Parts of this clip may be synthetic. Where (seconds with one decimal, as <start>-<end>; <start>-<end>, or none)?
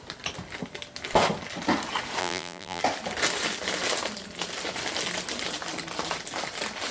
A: 2.2-2.8